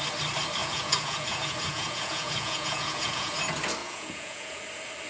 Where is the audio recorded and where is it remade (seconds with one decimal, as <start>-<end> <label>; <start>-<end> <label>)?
0.0-0.6 recorded; 0.6-3.4 remade; 3.4-3.8 recorded; 3.8-4.6 remade; 4.6-5.1 recorded